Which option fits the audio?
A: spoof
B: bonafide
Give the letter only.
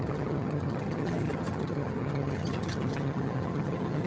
A